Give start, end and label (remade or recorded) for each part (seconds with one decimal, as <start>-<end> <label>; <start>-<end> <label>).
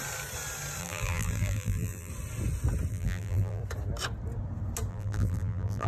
0.0-0.8 recorded; 0.8-2.1 remade; 2.1-2.9 recorded; 2.9-3.6 remade; 3.6-4.9 recorded; 4.9-5.9 remade